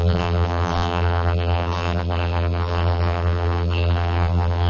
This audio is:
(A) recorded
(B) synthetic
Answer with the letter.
B